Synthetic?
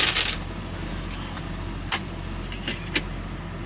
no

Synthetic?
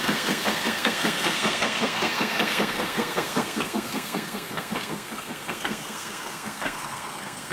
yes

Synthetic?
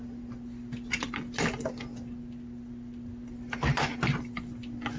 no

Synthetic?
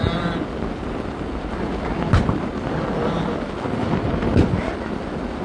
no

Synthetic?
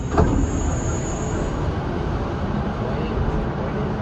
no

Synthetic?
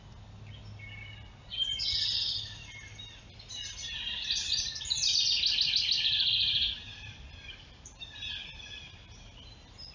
no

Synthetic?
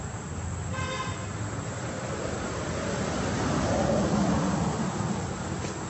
no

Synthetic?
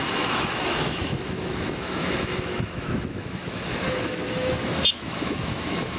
yes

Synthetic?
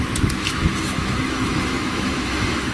yes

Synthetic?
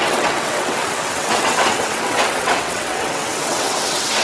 yes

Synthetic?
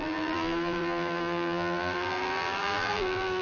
yes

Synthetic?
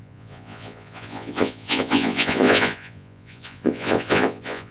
yes